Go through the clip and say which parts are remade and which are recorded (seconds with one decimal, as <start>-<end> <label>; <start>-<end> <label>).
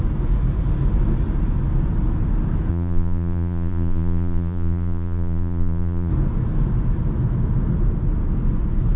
0.0-2.7 recorded; 2.7-6.1 remade; 6.1-9.0 recorded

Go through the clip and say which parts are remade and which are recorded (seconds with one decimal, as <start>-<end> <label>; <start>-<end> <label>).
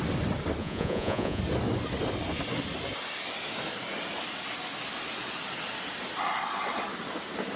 0.0-0.6 recorded; 0.6-1.4 remade; 1.4-7.6 recorded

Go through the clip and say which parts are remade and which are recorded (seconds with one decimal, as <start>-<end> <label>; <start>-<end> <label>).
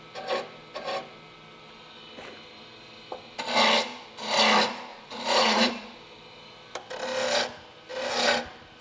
0.0-4.9 recorded; 4.9-5.7 remade; 5.7-8.8 recorded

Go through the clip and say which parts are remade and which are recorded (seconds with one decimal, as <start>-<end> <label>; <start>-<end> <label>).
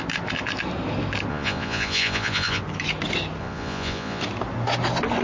0.0-1.3 recorded; 1.3-2.6 remade; 2.6-3.4 recorded; 3.4-4.2 remade; 4.2-5.2 recorded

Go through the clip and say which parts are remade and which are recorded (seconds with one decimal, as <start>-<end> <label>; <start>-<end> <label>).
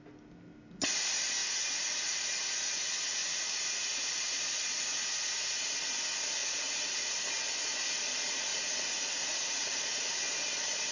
0.0-1.4 recorded; 1.4-2.2 remade; 2.2-3.2 recorded; 3.2-5.7 remade; 5.7-6.4 recorded; 6.4-7.1 remade; 7.1-8.5 recorded; 8.5-10.2 remade; 10.2-10.9 recorded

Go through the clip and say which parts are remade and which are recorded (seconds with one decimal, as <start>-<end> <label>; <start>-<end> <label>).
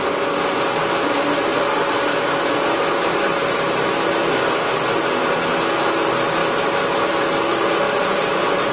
0.0-8.7 recorded